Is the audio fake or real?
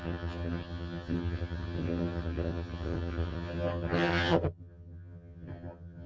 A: fake